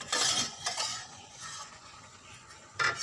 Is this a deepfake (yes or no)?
yes